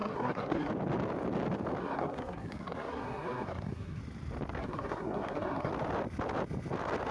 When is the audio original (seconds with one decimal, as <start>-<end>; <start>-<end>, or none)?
0.7-1.8; 4.0-4.6; 5.7-7.1